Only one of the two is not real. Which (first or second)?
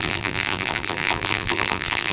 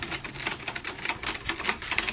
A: first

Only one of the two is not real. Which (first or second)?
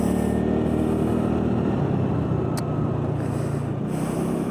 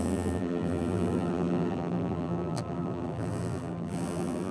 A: second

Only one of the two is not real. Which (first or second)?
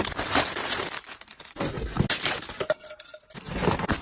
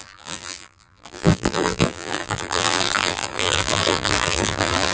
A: second